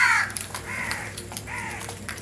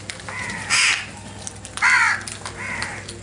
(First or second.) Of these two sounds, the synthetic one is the first